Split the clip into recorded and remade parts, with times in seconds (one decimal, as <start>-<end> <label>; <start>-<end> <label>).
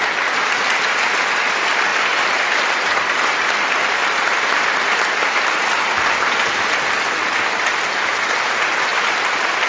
0.0-9.7 recorded